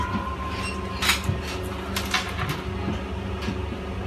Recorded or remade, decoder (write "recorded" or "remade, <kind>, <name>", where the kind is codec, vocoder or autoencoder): recorded